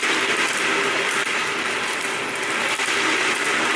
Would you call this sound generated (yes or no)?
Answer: no